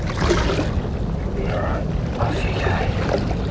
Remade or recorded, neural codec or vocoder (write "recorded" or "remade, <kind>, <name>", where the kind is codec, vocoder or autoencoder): recorded